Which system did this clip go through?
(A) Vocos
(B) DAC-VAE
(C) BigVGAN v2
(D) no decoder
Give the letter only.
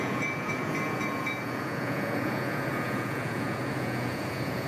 A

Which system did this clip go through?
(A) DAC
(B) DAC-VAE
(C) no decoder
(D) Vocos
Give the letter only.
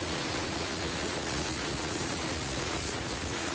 D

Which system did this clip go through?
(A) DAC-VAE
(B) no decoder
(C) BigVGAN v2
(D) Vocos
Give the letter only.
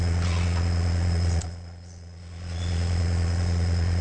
D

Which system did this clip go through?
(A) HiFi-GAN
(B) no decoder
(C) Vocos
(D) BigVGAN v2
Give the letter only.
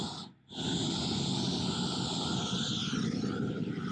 B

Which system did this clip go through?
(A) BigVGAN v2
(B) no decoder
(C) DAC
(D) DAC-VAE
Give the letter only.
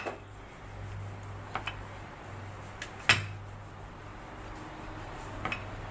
B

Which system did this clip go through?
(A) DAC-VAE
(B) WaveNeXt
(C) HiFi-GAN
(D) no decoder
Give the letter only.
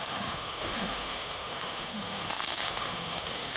A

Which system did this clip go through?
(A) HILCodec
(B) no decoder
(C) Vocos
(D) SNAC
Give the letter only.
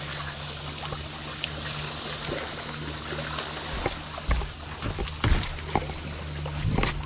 B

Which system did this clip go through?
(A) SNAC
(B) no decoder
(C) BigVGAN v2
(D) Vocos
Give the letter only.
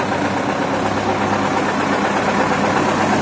B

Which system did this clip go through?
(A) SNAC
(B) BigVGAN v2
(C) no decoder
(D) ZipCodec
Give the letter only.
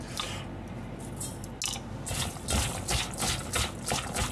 C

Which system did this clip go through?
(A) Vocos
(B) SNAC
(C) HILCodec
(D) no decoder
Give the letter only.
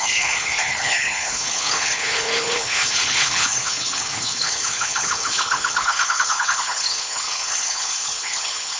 C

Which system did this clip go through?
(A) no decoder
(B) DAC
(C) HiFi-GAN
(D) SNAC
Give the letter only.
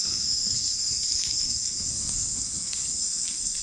D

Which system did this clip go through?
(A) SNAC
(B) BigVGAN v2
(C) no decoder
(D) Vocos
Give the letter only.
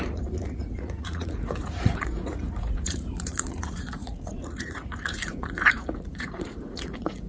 D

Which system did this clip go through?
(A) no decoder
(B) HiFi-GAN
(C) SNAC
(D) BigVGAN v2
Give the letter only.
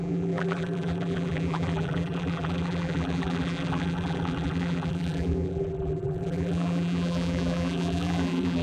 D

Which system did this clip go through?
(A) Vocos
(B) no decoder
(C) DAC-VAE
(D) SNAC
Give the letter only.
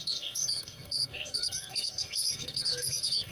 D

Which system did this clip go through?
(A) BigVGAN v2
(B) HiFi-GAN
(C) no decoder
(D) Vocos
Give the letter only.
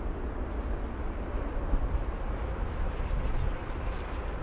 C